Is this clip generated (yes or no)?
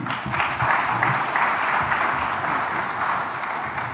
no